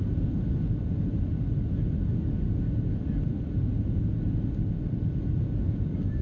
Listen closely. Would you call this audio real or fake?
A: real